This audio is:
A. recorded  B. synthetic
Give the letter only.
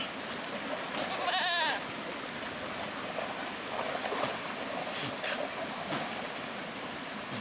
A